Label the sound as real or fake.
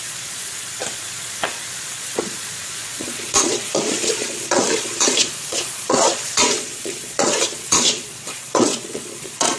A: fake